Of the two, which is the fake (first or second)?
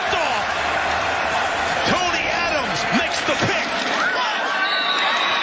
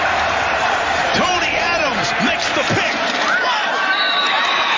second